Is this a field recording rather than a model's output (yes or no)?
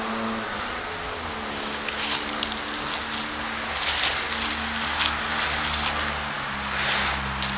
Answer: yes